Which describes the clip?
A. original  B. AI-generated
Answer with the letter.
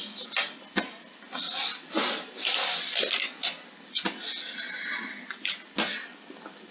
A